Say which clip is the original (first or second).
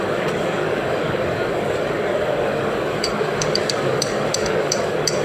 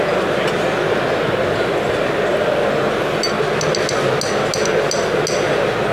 second